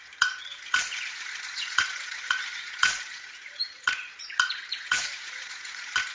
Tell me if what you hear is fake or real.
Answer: fake